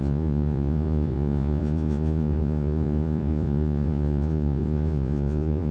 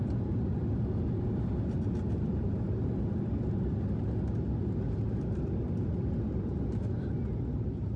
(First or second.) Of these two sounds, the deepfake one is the first